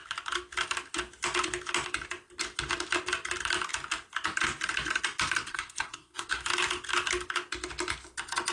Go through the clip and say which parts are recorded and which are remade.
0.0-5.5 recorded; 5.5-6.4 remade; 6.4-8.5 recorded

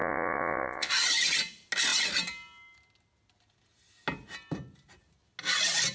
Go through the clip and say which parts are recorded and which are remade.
0.0-0.9 remade; 0.9-5.9 recorded

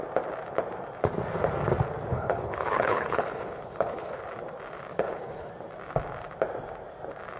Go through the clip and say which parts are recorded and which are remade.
0.0-2.1 recorded; 2.1-4.2 remade; 4.2-4.9 recorded; 4.9-5.5 remade; 5.5-7.4 recorded

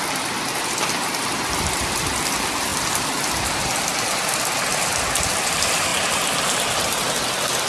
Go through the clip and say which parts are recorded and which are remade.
0.0-7.7 recorded

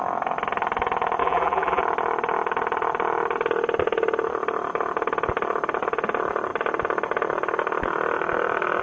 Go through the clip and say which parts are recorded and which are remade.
0.0-1.2 recorded; 1.2-1.8 remade; 1.8-8.8 recorded

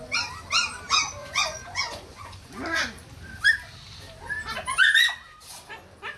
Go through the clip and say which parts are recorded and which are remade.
0.0-1.2 recorded; 1.2-2.5 remade; 2.5-6.2 recorded

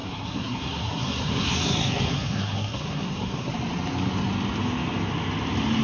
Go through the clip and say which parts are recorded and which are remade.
0.0-3.5 remade; 3.5-5.8 recorded

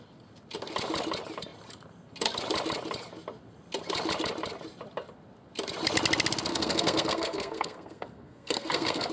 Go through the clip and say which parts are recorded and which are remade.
0.0-6.5 recorded; 6.5-9.1 remade